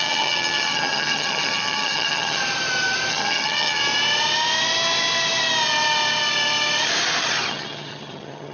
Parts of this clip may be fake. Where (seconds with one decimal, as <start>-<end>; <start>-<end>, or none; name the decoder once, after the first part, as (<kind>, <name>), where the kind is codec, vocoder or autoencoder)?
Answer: 0.0-2.4 (vocoder, HiFi-GAN); 3.1-3.8; 7.5-8.5